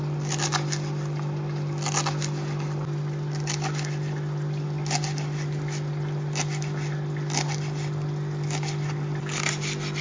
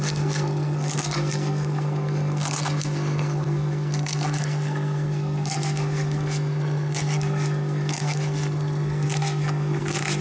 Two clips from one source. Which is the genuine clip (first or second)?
first